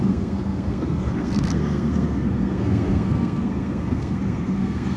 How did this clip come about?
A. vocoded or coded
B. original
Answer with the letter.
A